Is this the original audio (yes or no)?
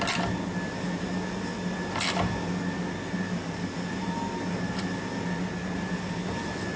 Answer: yes